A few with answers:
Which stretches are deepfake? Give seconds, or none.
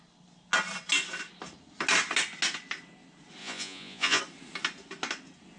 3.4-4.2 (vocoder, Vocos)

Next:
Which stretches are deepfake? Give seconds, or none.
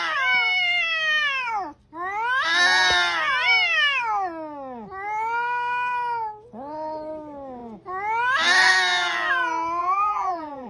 9.8-10.7 (vocoder, BigVGAN v2)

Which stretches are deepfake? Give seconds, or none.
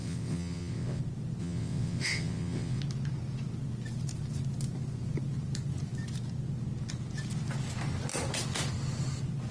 0.0-1.0 (vocoder, WaveNeXt); 1.4-2.8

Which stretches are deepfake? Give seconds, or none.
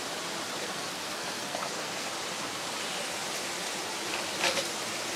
0.6-2.1 (codec, SNAC)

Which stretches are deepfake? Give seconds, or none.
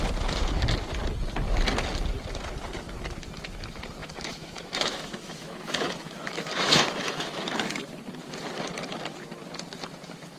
4.0-7.9 (autoencoder, DAC-VAE)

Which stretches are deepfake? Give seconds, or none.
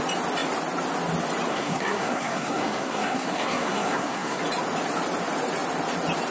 1.5-4.4 (codec, SNAC)